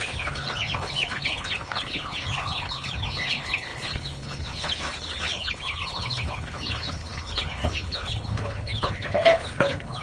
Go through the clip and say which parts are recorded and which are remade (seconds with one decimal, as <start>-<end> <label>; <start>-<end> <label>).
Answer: 0.0-10.0 remade